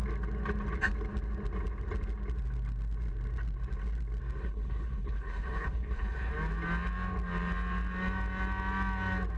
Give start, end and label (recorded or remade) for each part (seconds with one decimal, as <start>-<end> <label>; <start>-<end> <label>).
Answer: 0.0-4.4 recorded; 4.4-6.3 remade; 6.3-9.4 recorded